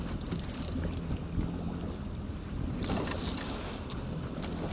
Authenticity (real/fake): real